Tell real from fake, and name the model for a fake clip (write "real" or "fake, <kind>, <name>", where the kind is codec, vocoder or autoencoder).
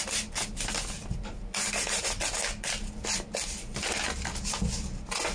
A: real